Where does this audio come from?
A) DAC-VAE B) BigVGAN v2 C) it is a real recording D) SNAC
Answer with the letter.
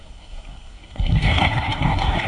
D